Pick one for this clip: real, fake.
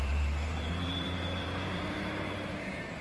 fake